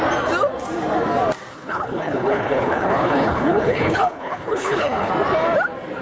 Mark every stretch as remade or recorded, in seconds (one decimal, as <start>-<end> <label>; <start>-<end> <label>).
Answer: 0.0-1.5 recorded; 1.5-5.1 remade; 5.1-6.0 recorded